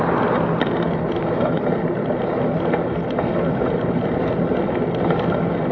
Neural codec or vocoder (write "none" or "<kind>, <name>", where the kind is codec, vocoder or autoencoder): none